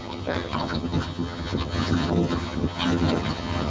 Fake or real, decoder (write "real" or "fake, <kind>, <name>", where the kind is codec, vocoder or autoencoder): fake, vocoder, HiFi-GAN